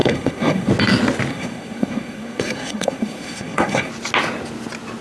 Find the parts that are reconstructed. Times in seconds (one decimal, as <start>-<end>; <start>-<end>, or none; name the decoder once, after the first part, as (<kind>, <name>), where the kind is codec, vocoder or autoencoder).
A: 0.0-0.7 (codec, SNAC); 1.3-3.9